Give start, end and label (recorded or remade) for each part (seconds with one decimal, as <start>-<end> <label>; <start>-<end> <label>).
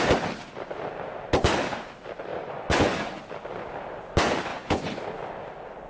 0.0-2.3 recorded; 2.3-3.2 remade; 3.2-4.5 recorded; 4.5-5.0 remade; 5.0-5.9 recorded